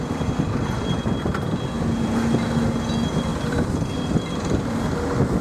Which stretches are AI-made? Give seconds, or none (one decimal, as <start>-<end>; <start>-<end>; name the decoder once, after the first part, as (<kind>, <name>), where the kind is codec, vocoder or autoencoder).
3.3-4.8 (vocoder, BigVGAN v2)